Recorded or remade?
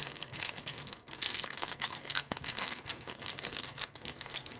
remade